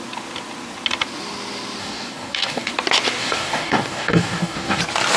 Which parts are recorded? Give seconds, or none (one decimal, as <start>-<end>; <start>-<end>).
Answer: 0.0-1.8; 2.7-3.2; 4.8-5.2